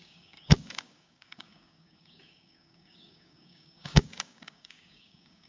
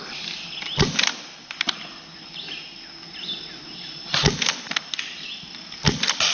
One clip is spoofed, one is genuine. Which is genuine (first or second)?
second